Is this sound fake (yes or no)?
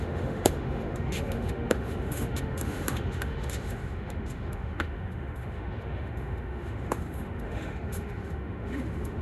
yes